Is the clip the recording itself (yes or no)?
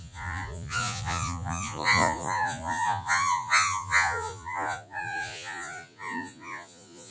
no